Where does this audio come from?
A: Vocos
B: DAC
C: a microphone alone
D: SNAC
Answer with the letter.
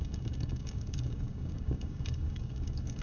B